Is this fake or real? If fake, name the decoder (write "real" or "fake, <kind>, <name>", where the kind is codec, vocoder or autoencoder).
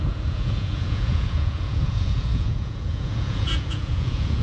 fake, vocoder, Vocos